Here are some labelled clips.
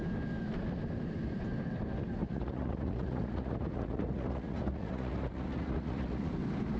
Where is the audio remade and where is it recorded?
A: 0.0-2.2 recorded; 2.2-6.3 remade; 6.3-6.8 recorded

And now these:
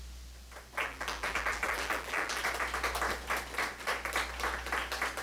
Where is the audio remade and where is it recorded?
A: 0.0-0.8 recorded; 0.8-2.4 remade; 2.4-5.2 recorded

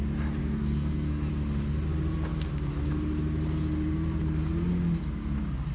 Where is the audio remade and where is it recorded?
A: 0.0-0.4 recorded; 0.4-1.3 remade; 1.3-5.7 recorded

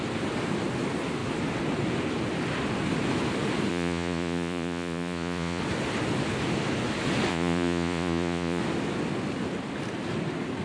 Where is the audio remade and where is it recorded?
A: 0.0-3.7 recorded; 3.7-5.6 remade; 5.6-7.3 recorded; 7.3-8.6 remade; 8.6-10.6 recorded

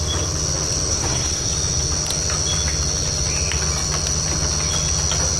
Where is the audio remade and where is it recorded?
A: 0.0-0.9 recorded; 0.9-1.5 remade; 1.5-5.4 recorded

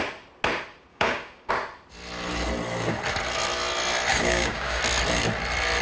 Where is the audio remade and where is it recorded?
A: 0.0-0.9 recorded; 0.9-1.5 remade; 1.5-4.1 recorded; 4.1-4.8 remade; 4.8-5.8 recorded

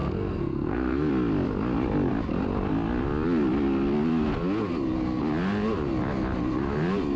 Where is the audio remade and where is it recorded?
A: 0.0-1.1 remade; 1.1-7.2 recorded

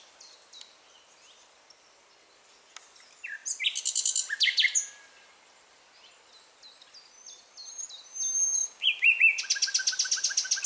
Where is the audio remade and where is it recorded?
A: 0.0-10.7 recorded